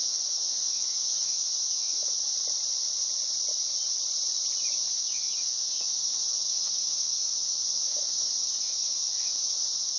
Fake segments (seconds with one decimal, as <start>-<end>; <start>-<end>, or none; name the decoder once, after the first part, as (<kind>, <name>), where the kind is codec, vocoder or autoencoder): 0.0-2.2 (autoencoder, DAC-VAE); 4.9-10.0